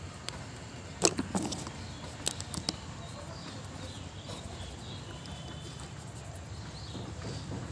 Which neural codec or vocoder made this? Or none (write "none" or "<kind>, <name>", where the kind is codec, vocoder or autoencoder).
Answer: none